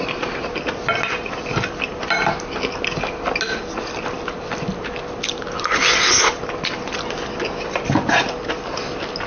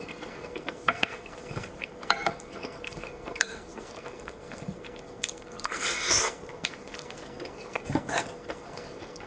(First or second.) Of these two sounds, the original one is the first